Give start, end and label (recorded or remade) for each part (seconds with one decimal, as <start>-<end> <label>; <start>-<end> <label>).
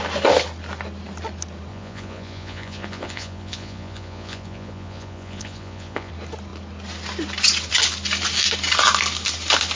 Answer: 0.0-1.7 recorded; 1.7-6.1 remade; 6.1-9.8 recorded